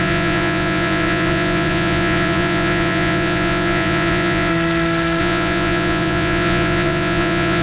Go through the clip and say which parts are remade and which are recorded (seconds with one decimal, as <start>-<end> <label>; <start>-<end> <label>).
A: 0.0-4.5 remade; 4.5-5.2 recorded; 5.2-7.6 remade